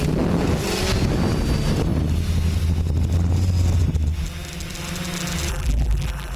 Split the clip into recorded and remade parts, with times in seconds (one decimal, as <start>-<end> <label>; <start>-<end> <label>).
0.0-5.5 recorded; 5.5-6.4 remade